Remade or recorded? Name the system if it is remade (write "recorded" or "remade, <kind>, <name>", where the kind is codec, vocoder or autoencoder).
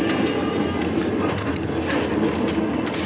recorded